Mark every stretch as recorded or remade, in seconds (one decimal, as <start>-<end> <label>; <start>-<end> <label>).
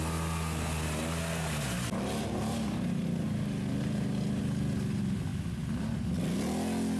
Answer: 0.0-7.0 recorded